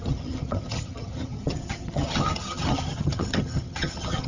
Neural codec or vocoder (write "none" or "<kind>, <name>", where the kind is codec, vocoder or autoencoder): vocoder, HiFi-GAN